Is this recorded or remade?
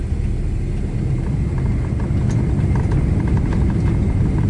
recorded